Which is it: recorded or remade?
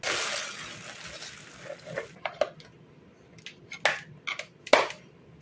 recorded